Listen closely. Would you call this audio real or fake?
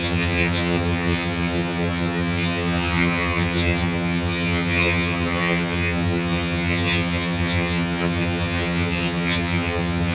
fake